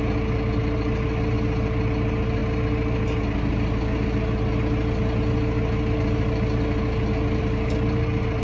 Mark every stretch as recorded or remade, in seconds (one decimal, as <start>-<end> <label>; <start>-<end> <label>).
0.0-8.4 recorded